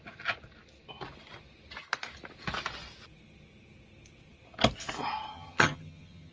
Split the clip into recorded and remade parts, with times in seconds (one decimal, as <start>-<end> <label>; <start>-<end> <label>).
0.0-5.3 recorded; 5.3-6.3 remade